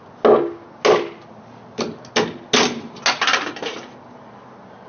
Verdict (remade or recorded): recorded